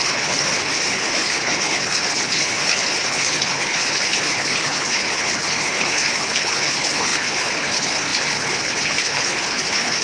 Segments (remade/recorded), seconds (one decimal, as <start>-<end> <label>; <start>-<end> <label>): 0.0-10.0 remade